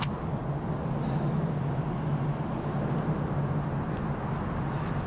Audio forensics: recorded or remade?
recorded